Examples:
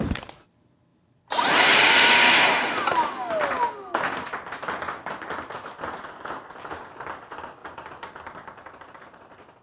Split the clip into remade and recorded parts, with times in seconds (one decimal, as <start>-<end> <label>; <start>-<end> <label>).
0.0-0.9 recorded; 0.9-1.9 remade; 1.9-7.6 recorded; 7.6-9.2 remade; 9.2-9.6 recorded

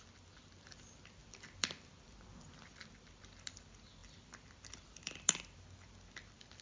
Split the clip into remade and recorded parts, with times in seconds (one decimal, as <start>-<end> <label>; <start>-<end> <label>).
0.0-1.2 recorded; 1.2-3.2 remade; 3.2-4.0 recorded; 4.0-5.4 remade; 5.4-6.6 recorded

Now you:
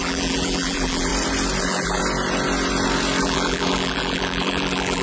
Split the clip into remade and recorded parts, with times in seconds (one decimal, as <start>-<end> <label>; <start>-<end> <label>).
0.0-1.1 remade; 1.1-1.6 recorded; 1.6-2.0 remade; 2.0-3.2 recorded; 3.2-5.0 remade